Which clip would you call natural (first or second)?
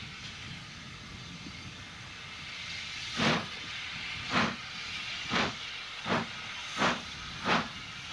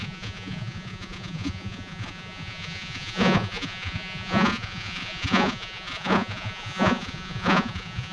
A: first